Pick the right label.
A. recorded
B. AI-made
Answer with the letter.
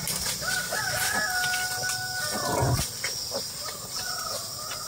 A